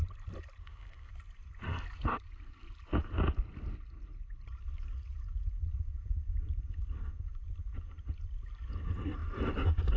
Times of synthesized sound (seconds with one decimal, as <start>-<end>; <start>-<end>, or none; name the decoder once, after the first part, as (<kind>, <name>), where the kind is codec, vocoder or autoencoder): 0.6-1.1 (codec, ZipCodec)